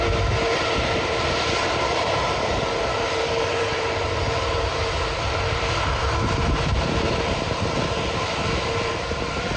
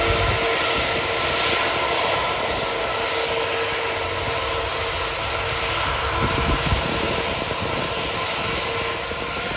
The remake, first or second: first